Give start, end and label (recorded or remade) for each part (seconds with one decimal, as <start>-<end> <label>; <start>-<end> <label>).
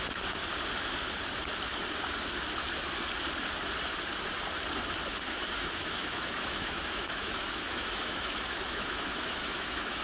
0.0-0.4 remade; 0.4-5.2 recorded; 5.2-10.0 remade